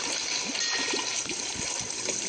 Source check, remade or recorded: recorded